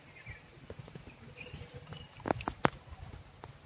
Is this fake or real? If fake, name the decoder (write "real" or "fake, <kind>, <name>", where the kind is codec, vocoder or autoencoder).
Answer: real